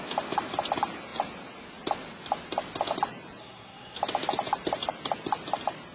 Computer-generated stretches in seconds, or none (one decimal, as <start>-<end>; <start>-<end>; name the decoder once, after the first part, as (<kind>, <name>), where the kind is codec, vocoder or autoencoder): 3.4-4.0 (codec, SNAC)